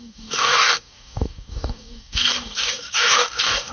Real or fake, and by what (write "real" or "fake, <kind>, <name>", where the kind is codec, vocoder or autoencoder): fake, codec, DAC